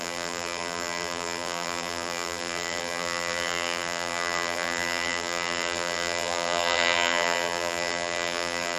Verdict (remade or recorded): remade